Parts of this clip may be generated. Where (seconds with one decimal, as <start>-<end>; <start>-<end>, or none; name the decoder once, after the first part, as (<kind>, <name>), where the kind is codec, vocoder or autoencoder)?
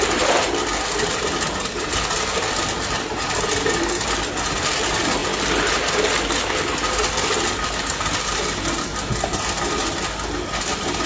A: none